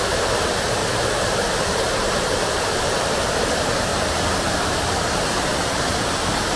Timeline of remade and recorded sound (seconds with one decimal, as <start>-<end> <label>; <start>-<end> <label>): 0.0-0.8 recorded; 0.8-2.9 remade; 2.9-3.9 recorded; 3.9-5.2 remade; 5.2-6.6 recorded